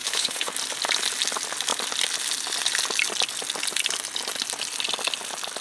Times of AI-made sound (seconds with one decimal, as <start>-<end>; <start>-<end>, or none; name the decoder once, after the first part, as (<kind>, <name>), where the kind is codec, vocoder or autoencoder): 0.0-0.5 (codec, HILCodec)

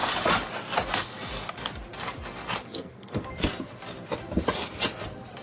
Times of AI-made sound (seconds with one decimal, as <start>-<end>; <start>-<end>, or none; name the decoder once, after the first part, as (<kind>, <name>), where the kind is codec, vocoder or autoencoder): 2.6-3.3 (codec, SNAC)

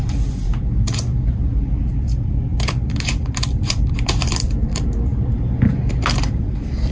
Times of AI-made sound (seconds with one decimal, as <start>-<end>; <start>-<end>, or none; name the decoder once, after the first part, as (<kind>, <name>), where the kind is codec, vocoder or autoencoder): 0.0-0.5 (vocoder, BigVGAN v2); 1.3-6.9

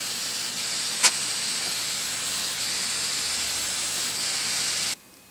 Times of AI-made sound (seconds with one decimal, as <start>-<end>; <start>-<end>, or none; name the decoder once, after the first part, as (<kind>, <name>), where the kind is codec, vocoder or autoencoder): 0.4-1.0 (vocoder, BigVGAN v2)

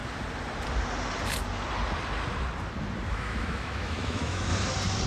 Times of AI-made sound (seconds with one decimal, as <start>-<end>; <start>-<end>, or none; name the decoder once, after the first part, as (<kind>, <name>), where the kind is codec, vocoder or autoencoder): 3.1-4.5 (autoencoder, DAC-VAE)